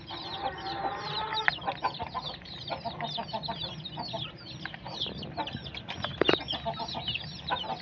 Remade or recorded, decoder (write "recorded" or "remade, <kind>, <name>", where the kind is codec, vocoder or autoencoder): recorded